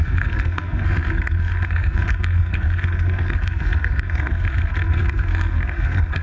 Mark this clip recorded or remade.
remade